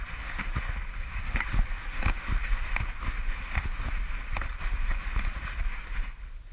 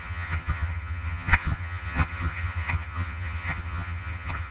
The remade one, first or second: second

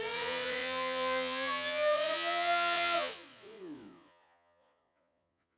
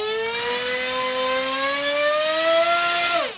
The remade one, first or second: first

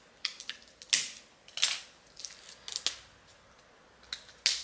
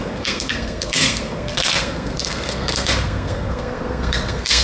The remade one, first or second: second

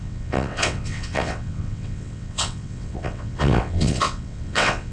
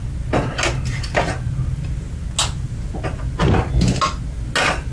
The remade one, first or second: first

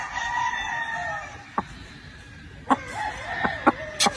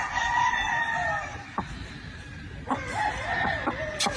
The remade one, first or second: second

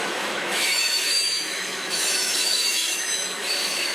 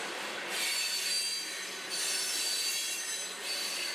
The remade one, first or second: first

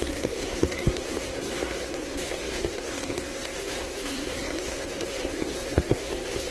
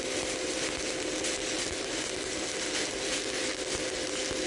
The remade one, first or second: first